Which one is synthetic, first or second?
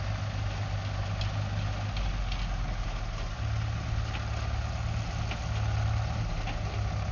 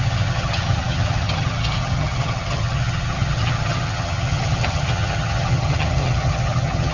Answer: second